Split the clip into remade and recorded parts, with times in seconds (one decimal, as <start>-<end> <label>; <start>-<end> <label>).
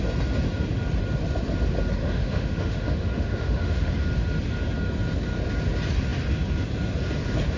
0.0-2.0 recorded; 2.0-3.9 remade; 3.9-7.6 recorded